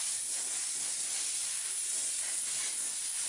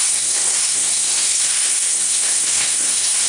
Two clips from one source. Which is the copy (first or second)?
second